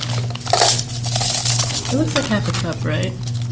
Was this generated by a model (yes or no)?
no